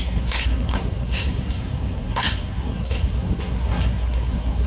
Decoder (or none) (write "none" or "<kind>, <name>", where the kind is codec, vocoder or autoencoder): codec, SNAC